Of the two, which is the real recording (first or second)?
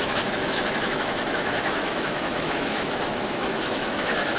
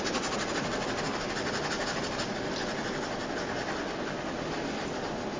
second